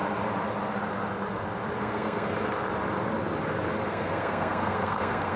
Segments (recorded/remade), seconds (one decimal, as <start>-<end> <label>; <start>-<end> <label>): 0.0-1.8 recorded; 1.8-2.3 remade; 2.3-3.9 recorded; 3.9-5.4 remade